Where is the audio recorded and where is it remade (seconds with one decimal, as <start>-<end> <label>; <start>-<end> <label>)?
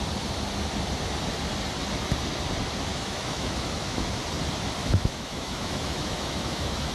0.0-2.9 recorded; 2.9-4.1 remade; 4.1-4.8 recorded; 4.8-6.9 remade